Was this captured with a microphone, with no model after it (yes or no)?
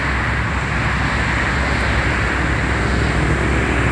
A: yes